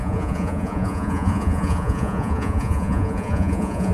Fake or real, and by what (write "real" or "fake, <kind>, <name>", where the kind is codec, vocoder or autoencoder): fake, vocoder, Vocos